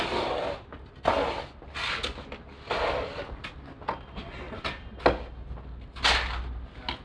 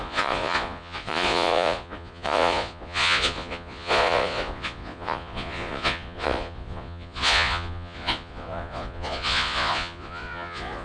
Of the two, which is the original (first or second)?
first